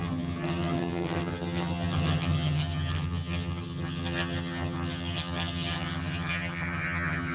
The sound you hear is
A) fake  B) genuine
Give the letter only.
A